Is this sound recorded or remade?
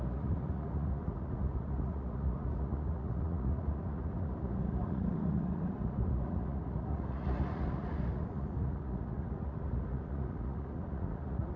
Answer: remade